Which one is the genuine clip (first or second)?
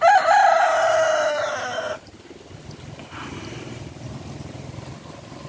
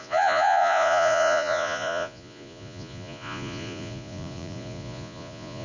first